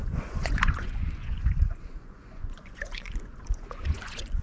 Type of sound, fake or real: fake